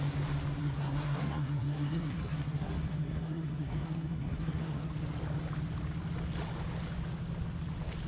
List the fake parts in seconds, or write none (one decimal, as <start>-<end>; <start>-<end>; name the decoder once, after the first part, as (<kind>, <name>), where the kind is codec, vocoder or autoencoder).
0.6-4.9 (codec, SNAC)